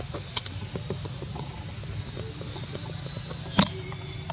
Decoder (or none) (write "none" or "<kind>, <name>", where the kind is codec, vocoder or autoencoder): none